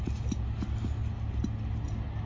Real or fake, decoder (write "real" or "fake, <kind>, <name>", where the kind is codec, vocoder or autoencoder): real